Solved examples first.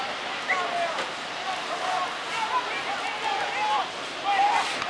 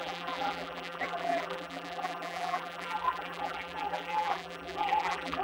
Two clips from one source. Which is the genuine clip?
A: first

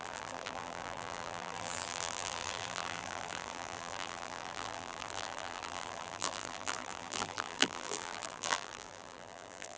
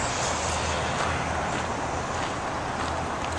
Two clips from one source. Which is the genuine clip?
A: second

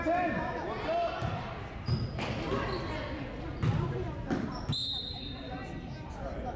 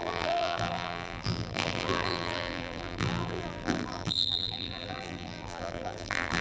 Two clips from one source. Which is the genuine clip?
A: first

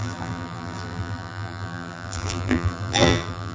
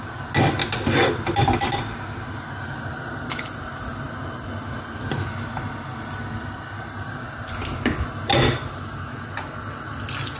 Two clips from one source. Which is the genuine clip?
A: second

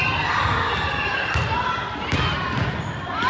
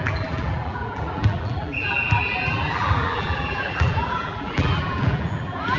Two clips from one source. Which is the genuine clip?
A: first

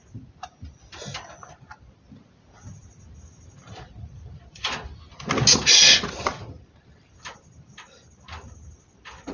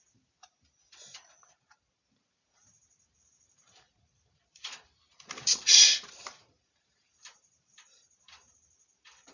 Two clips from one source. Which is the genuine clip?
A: first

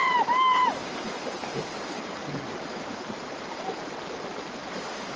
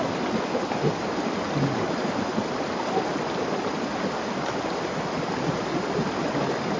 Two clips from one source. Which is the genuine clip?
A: second